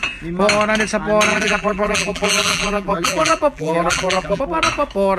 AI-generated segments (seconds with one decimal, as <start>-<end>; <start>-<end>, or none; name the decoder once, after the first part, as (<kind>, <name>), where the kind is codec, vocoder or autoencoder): 1.3-4.4 (vocoder, BigVGAN v2)